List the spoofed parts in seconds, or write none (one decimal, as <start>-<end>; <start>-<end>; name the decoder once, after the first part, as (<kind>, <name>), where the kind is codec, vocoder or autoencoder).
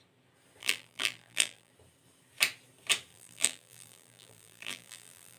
0.6-1.7 (vocoder, BigVGAN v2); 3.1-5.4